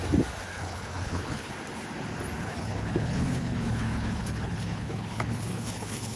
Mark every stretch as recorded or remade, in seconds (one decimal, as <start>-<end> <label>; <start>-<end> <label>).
0.0-0.5 recorded; 0.5-1.5 remade; 1.5-2.4 recorded; 2.4-6.2 remade